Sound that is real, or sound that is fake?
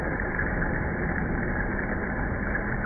real